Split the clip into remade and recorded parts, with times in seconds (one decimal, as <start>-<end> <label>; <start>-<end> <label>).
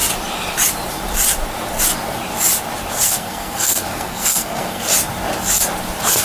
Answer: 0.0-2.9 recorded; 2.9-4.9 remade; 4.9-6.2 recorded